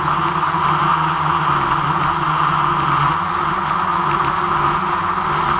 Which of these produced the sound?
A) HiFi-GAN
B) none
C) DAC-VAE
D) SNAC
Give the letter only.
B